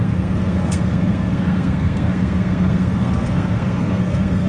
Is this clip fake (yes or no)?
yes